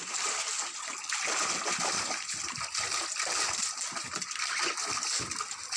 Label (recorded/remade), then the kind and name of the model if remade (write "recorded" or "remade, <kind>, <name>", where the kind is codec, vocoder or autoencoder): recorded